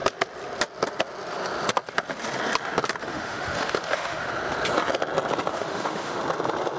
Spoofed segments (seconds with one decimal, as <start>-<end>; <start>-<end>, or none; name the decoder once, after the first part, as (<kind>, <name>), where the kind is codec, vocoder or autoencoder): 3.0-4.3 (autoencoder, DAC-VAE); 5.5-6.2

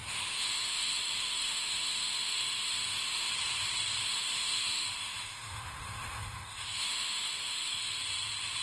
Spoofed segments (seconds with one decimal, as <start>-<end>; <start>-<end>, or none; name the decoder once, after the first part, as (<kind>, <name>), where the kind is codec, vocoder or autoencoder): 0.0-3.3 (autoencoder, DAC-VAE); 4.0-8.0